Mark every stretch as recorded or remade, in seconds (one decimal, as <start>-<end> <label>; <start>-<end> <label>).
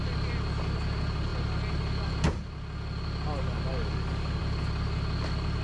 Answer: 0.0-3.7 recorded; 3.7-4.4 remade; 4.4-5.6 recorded